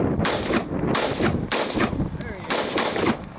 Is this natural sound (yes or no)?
yes